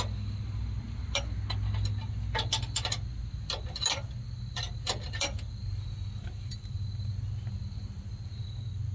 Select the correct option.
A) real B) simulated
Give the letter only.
A